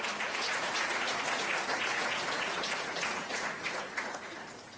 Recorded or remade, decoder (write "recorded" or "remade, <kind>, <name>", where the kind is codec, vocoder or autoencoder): remade, vocoder, Vocos